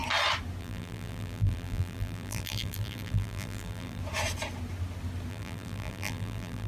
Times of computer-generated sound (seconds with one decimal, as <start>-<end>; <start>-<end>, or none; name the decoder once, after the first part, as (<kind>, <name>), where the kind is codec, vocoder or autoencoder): 0.6-4.0 (vocoder, BigVGAN v2); 5.3-6.7